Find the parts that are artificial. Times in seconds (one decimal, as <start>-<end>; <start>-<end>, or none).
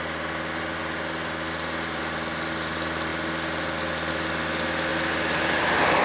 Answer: none